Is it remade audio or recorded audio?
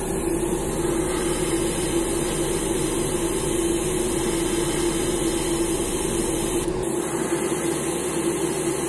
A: recorded